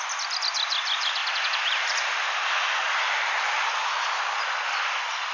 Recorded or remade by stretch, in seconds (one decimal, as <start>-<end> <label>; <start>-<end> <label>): 0.0-5.3 recorded